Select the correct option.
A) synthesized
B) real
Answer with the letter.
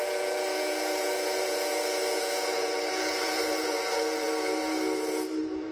A